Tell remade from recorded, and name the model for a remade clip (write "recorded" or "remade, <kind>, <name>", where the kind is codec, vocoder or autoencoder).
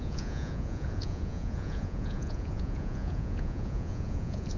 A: remade, vocoder, Vocos